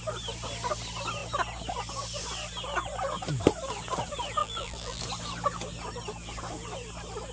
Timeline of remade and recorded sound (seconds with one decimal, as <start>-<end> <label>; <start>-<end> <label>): 0.0-4.4 recorded; 4.4-5.0 remade; 5.0-7.3 recorded